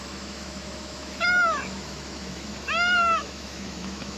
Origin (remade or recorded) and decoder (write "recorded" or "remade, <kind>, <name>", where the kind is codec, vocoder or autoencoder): remade, autoencoder, DAC-VAE